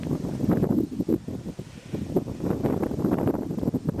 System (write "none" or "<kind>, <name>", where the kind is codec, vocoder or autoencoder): none